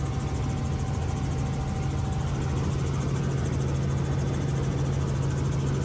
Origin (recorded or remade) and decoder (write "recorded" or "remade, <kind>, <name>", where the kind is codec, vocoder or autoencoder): recorded